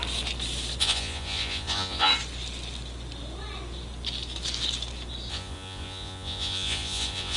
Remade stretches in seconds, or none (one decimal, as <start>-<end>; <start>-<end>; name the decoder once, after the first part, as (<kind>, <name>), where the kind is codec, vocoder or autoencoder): 0.8-2.1 (vocoder, Vocos); 5.3-7.4